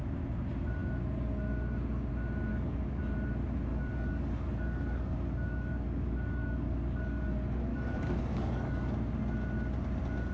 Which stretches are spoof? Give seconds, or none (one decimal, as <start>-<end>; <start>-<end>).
2.5-3.0; 3.7-7.2; 7.7-8.9

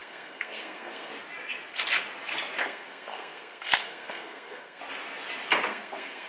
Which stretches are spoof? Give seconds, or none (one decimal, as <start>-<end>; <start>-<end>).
0.0-1.1; 2.6-4.8; 5.7-6.3

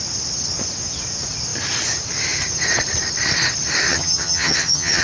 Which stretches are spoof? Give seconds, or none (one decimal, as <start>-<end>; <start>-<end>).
3.9-5.0

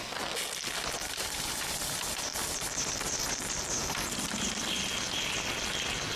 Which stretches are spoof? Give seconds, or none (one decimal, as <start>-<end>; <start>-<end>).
2.3-3.0; 3.8-4.8

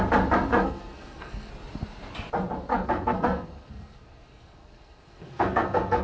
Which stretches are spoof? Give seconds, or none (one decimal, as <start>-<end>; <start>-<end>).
0.5-1.5; 2.7-6.0

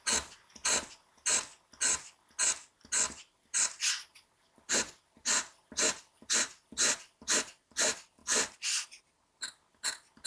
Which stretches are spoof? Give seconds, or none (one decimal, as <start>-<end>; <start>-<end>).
none

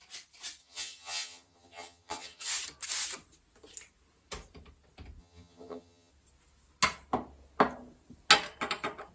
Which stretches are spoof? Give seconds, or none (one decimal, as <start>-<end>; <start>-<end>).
0.6-2.5; 5.2-6.1

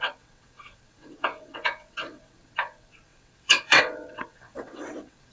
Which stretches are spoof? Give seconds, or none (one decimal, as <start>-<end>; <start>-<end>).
0.0-5.3